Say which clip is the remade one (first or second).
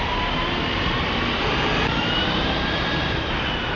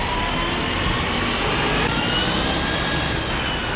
first